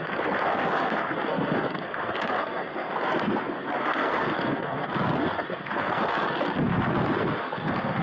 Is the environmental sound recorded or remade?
remade